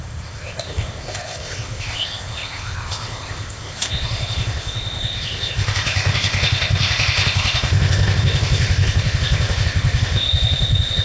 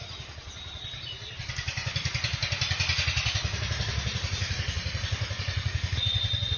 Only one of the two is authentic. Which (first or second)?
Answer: second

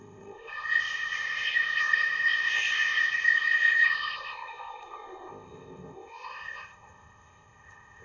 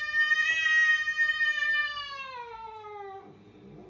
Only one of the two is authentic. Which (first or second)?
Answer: second